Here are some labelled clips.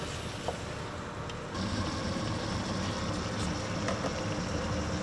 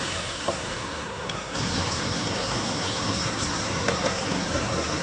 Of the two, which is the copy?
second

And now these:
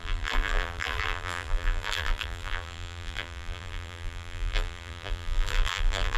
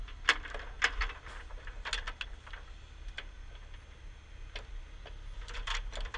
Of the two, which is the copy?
first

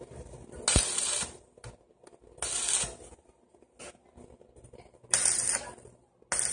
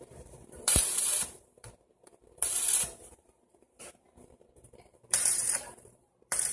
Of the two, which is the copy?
second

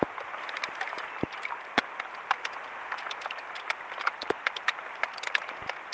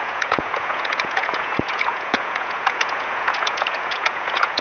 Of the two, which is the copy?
second